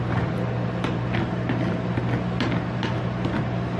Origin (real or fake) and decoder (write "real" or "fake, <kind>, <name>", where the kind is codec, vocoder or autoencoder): real